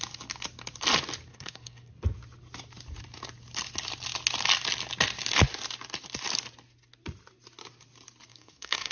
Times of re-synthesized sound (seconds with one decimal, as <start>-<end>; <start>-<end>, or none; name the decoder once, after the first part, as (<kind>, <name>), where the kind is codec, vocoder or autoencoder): 1.3-1.9 (codec, SNAC); 8.3-8.9